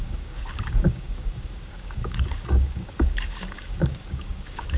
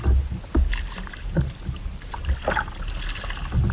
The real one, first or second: second